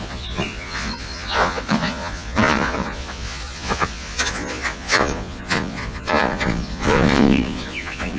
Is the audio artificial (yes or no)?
yes